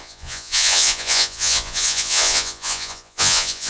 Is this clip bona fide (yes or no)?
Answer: no